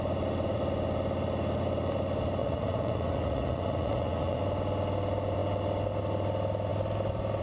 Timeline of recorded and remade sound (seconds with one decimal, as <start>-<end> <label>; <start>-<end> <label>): 0.0-2.4 recorded; 2.4-4.4 remade; 4.4-7.4 recorded